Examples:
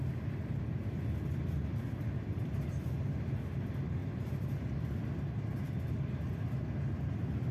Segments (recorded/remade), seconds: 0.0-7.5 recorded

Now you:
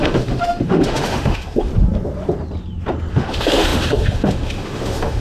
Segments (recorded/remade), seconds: 0.0-1.7 remade; 1.7-3.1 recorded; 3.1-5.2 remade

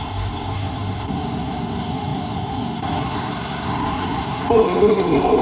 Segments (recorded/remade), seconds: 0.0-5.4 remade

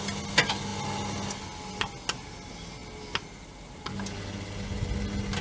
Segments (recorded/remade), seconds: 0.0-5.4 recorded

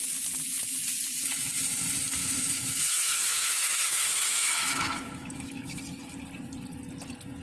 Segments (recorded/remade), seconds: 0.0-2.2 recorded; 2.2-5.8 remade; 5.8-7.4 recorded